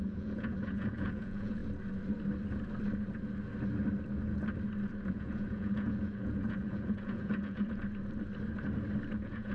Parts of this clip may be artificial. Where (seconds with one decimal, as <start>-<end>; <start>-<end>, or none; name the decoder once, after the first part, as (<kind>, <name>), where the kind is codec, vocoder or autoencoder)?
0.0-1.6 (vocoder, Vocos); 5.1-7.8; 9.1-9.5